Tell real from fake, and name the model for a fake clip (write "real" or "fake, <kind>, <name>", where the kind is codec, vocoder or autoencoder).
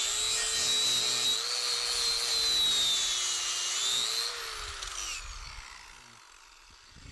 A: real